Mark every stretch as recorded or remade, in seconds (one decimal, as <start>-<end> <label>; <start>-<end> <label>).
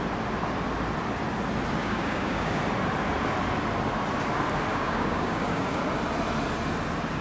0.0-1.8 recorded; 1.8-2.6 remade; 2.6-4.7 recorded; 4.7-5.8 remade; 5.8-7.2 recorded